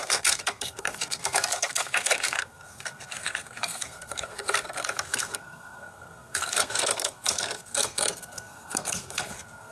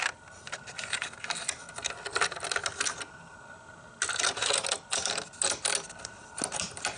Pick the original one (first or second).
second